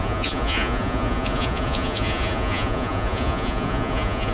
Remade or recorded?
remade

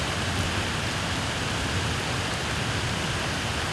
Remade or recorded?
recorded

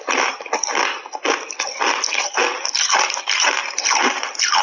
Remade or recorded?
recorded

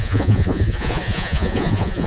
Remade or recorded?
remade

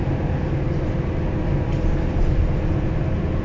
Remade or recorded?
recorded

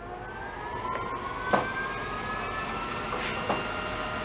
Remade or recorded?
recorded